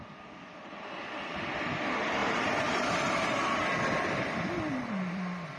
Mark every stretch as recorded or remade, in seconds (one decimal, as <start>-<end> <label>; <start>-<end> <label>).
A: 0.0-2.2 recorded; 2.2-5.6 remade